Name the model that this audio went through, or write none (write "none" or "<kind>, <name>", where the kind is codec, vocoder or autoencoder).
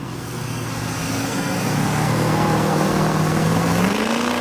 codec, SNAC